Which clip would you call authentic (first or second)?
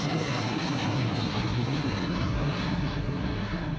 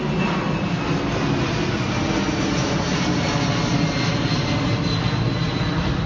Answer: second